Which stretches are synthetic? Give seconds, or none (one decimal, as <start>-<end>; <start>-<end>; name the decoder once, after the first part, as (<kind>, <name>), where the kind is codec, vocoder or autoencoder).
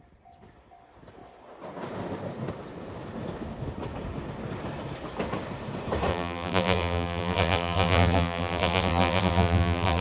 6.1-10.0 (vocoder, BigVGAN v2)